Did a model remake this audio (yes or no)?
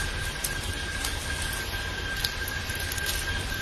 no